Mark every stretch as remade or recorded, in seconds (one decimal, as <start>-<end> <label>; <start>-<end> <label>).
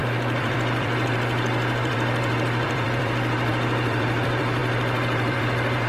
0.0-5.9 remade